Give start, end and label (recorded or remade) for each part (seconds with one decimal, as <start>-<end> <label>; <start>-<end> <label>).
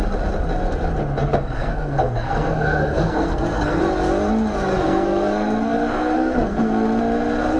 0.0-1.2 recorded; 1.2-3.8 remade; 3.8-4.7 recorded; 4.7-7.0 remade; 7.0-7.6 recorded